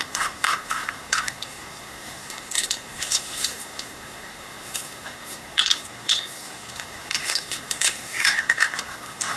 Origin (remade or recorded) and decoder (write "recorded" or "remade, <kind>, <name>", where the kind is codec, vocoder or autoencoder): remade, codec, SNAC